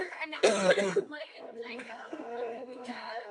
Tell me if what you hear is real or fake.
fake